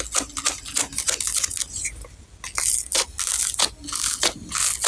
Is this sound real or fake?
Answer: real